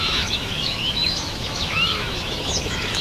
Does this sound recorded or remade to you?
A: remade